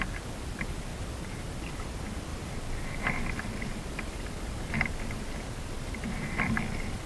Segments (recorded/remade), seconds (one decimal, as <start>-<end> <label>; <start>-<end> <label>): 0.0-7.1 recorded